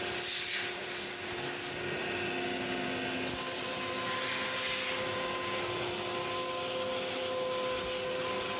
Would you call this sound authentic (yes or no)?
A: yes